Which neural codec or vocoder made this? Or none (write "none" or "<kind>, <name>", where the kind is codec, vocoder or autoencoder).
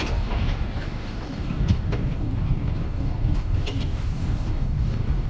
codec, DAC